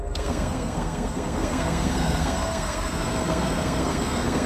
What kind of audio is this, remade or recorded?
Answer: remade